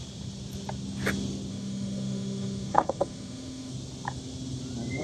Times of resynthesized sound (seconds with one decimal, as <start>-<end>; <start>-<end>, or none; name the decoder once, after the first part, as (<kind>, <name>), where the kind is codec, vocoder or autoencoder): 1.5-3.7 (autoencoder, DAC-VAE)